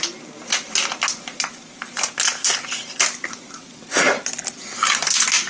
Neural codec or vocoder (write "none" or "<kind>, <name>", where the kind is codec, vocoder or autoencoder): none